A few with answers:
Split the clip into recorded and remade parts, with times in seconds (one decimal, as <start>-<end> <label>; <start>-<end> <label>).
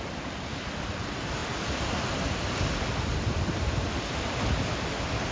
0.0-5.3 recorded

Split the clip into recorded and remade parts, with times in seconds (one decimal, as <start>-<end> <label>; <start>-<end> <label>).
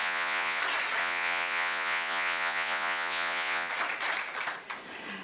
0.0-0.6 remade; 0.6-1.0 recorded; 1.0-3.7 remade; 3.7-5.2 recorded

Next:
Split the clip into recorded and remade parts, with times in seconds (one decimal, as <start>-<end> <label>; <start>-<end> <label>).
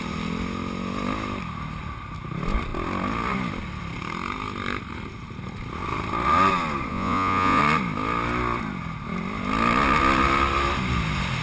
0.0-6.9 recorded; 6.9-7.6 remade; 7.6-11.4 recorded